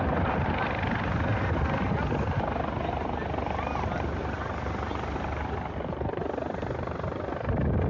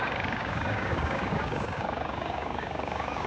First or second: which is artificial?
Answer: second